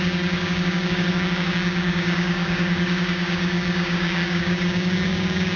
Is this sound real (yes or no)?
no